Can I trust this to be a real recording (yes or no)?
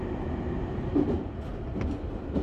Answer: yes